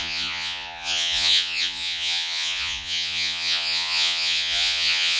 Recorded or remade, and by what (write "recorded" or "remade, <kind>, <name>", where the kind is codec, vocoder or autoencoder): remade, vocoder, Vocos